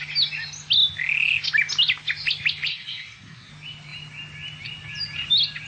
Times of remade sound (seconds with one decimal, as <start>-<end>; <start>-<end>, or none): 2.7-3.5